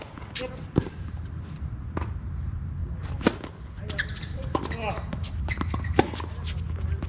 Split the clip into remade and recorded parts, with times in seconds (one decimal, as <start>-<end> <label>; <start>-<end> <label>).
0.0-7.1 recorded